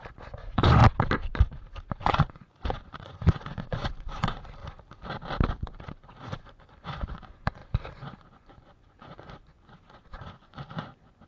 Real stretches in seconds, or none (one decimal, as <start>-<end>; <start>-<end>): 0.8-2.0; 4.6-5.5